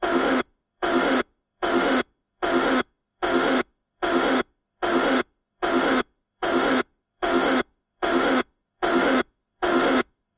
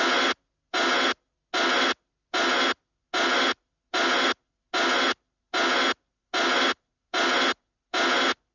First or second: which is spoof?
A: first